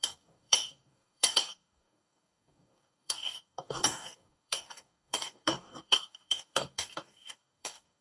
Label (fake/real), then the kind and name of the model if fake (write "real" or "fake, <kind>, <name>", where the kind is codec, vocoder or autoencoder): fake, codec, DAC